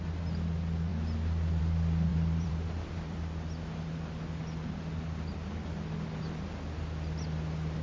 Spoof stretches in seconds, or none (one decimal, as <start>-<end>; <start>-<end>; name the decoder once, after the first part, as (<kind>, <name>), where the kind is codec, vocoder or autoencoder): 2.1-3.2 (vocoder, BigVGAN v2)

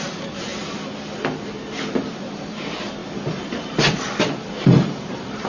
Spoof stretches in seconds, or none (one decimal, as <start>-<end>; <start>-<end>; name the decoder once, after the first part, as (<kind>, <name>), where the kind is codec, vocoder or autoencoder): 0.0-0.5 (vocoder, BigVGAN v2); 1.7-5.5

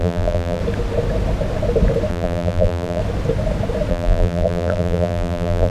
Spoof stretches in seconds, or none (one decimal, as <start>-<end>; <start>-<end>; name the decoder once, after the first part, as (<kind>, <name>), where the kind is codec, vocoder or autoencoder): 0.0-0.6 (vocoder, BigVGAN v2); 2.1-3.0; 3.9-5.7

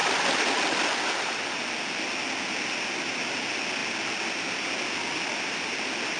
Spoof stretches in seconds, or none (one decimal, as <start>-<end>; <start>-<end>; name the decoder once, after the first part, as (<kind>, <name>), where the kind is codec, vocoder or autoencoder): none